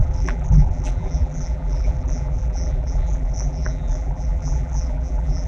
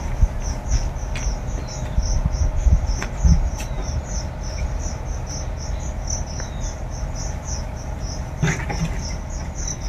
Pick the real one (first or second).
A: second